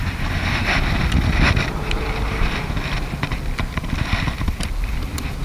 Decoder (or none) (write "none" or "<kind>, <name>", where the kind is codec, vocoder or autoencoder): none